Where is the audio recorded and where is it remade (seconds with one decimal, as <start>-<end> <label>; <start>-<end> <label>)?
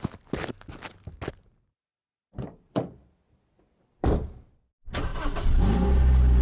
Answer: 0.0-1.9 recorded; 1.9-3.0 remade; 3.0-4.0 recorded; 4.0-4.5 remade; 4.5-6.4 recorded